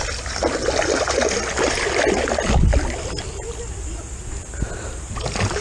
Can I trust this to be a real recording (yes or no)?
yes